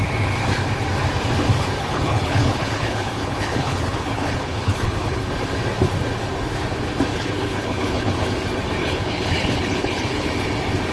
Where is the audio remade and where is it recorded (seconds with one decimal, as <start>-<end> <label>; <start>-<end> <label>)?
0.0-1.8 recorded; 1.8-5.3 remade; 5.3-7.1 recorded; 7.1-8.2 remade; 8.2-8.8 recorded; 8.8-10.3 remade; 10.3-10.9 recorded